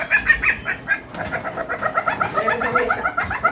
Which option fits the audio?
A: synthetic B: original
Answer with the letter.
B